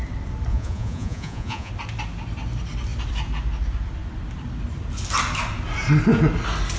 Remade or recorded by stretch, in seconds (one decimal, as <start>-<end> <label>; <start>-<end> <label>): 0.0-0.5 recorded; 0.5-1.7 remade; 1.7-6.8 recorded